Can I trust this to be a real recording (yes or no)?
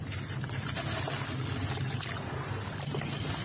yes